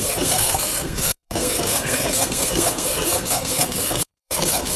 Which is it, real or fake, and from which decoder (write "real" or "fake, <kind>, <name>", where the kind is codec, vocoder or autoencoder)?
fake, codec, SNAC